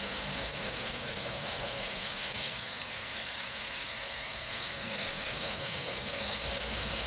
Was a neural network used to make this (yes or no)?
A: yes